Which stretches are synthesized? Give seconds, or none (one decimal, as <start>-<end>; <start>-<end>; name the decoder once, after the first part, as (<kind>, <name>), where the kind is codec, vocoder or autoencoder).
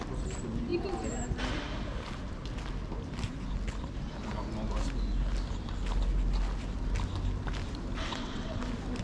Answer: 8.1-8.6 (vocoder, WaveNeXt)